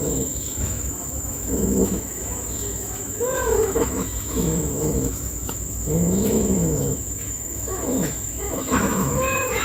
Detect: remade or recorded remade